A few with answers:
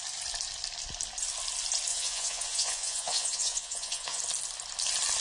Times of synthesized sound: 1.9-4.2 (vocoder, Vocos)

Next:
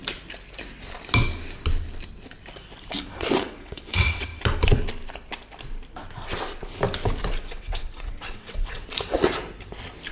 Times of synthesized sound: 3.0-4.3 (vocoder, WaveNeXt); 7.4-8.8

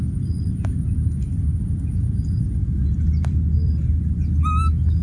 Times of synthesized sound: 3.6-4.1 (vocoder, BigVGAN v2)

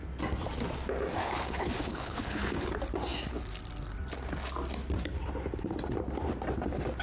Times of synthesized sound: 1.2-2.7 (codec, HILCodec)

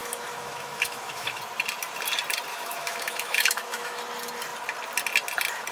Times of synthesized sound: 0.0-1.4 (autoencoder, DAC-VAE); 2.5-4.0